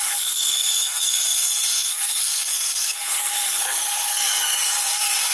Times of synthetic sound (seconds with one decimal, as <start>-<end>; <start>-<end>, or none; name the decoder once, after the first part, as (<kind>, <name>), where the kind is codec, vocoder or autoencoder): 0.0-5.3 (codec, SNAC)